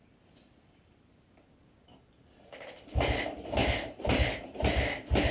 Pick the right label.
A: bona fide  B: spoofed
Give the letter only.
A